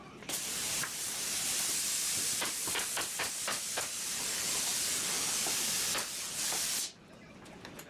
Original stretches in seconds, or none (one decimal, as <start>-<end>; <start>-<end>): 4.2-7.9